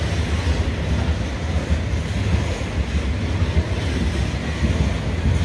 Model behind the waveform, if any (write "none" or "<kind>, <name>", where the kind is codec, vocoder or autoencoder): none